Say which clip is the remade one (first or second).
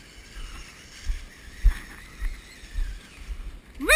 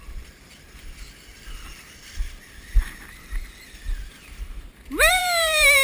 second